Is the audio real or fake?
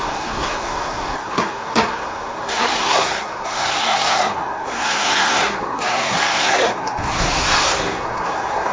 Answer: fake